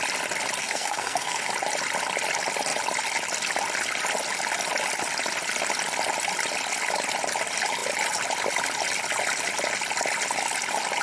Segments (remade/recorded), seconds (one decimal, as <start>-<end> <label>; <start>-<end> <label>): 0.0-0.6 recorded; 0.6-1.5 remade; 1.5-11.0 recorded